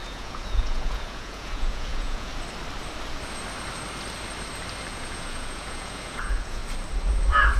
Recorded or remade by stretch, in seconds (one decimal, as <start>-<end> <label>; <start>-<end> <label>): 0.0-2.3 remade; 2.3-4.9 recorded; 4.9-6.6 remade; 6.6-7.6 recorded